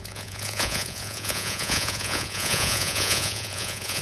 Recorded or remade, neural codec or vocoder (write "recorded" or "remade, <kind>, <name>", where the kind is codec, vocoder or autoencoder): remade, vocoder, Vocos